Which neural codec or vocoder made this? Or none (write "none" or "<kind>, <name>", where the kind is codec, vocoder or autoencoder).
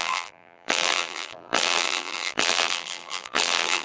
vocoder, BigVGAN v2